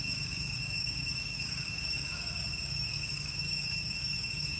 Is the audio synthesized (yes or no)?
yes